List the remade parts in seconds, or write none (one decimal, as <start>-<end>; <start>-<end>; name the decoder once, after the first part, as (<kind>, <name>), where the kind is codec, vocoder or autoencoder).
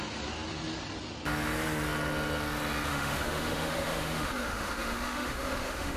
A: 2.9-6.0 (autoencoder, DAC-VAE)